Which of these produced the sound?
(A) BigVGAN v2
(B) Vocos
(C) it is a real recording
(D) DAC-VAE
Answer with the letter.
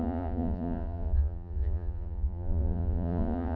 B